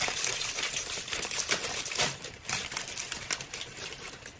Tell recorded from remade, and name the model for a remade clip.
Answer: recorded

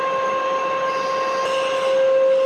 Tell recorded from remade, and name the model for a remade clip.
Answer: recorded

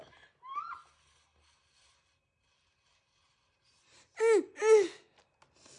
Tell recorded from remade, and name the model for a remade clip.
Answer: recorded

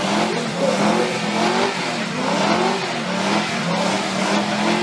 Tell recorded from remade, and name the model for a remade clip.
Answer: recorded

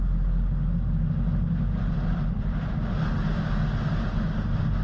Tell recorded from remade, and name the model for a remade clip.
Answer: recorded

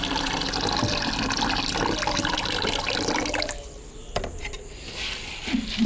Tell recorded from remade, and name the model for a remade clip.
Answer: recorded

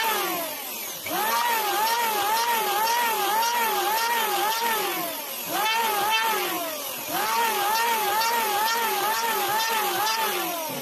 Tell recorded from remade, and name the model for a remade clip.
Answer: recorded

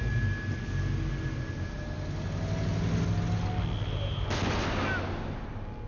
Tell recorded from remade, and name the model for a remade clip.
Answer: recorded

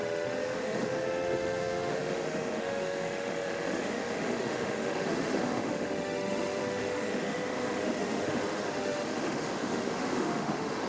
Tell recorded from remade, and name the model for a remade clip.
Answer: remade, autoencoder, DAC-VAE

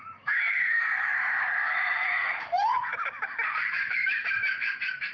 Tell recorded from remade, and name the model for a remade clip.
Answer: remade, autoencoder, DAC-VAE